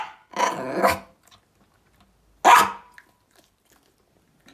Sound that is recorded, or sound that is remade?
recorded